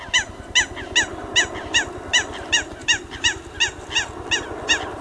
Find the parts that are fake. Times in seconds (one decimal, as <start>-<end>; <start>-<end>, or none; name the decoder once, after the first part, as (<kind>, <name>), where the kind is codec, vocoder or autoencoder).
2.1-3.9 (vocoder, BigVGAN v2)

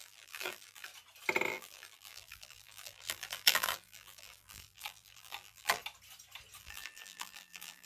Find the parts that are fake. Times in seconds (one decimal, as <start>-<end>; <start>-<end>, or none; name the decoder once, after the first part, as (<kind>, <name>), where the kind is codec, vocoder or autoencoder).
0.0-0.9 (vocoder, BigVGAN v2); 1.5-5.8; 6.6-7.9

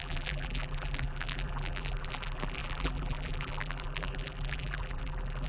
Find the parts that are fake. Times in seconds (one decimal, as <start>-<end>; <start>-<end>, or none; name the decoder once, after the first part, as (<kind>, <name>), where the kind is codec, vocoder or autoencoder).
0.0-5.5 (vocoder, BigVGAN v2)